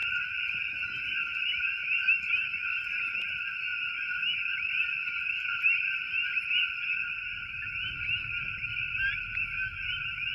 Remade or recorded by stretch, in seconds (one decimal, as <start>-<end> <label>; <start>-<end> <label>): 0.0-1.3 recorded; 1.3-3.0 remade; 3.0-10.3 recorded